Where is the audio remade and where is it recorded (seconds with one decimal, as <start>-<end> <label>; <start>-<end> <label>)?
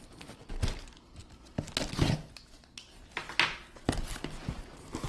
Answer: 0.0-5.1 recorded